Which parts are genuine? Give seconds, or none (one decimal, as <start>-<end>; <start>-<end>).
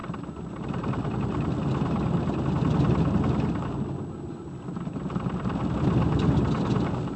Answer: 0.0-7.2